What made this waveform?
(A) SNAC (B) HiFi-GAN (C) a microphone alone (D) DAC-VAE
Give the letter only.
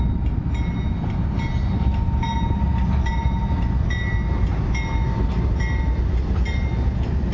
C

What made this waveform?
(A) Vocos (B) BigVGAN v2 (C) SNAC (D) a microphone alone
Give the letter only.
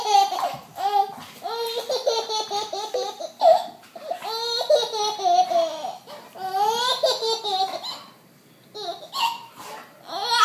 D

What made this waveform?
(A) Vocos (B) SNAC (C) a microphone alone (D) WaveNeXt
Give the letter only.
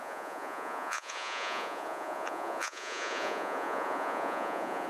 A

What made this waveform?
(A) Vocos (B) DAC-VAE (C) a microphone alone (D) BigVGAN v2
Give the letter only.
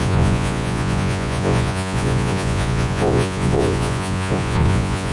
A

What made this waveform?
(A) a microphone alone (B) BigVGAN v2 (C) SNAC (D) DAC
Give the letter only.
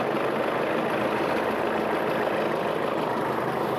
A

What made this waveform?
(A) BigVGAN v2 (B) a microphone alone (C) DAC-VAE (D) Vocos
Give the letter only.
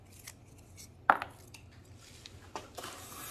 B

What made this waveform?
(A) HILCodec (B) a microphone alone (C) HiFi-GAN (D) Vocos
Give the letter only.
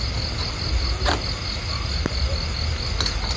B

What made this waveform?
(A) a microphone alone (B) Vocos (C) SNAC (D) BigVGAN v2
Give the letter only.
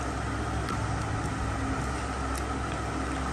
A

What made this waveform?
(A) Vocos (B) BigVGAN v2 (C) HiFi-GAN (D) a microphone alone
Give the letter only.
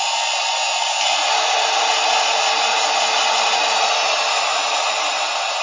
D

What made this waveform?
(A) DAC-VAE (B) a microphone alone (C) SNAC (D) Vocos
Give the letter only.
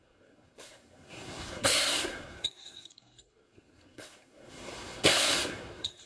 C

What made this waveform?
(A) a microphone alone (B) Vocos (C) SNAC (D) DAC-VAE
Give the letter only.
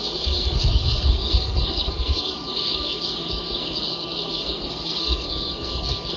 C